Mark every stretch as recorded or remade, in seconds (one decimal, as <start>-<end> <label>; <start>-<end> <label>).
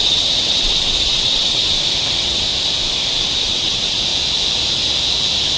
0.0-1.6 remade; 1.6-2.1 recorded; 2.1-2.5 remade; 2.5-3.4 recorded; 3.4-4.1 remade; 4.1-5.6 recorded